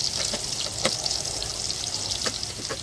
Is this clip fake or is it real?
fake